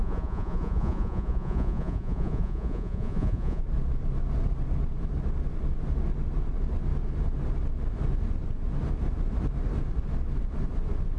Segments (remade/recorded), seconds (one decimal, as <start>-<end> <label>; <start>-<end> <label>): 0.0-3.6 remade; 3.6-11.2 recorded

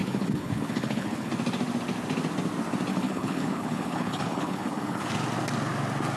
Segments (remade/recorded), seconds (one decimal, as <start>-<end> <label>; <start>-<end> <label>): 0.0-1.3 remade; 1.3-2.9 recorded; 2.9-5.1 remade; 5.1-6.2 recorded

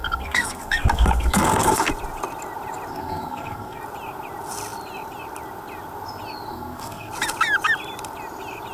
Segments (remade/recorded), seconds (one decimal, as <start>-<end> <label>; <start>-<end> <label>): 0.0-1.9 remade; 1.9-2.9 recorded; 2.9-3.8 remade; 3.8-6.5 recorded; 6.5-7.1 remade; 7.1-8.7 recorded

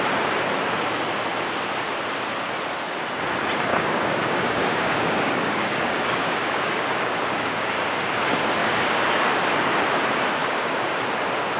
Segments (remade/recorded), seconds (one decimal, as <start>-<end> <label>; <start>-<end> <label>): 0.0-3.7 recorded; 3.7-8.0 remade; 8.0-8.6 recorded; 8.6-9.3 remade; 9.3-10.4 recorded; 10.4-11.0 remade; 11.0-11.6 recorded